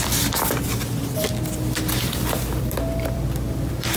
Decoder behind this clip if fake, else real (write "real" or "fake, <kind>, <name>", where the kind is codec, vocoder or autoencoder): fake, vocoder, BigVGAN v2